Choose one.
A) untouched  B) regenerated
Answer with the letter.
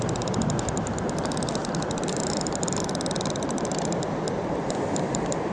A